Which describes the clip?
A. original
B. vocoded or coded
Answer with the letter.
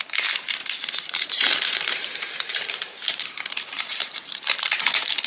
B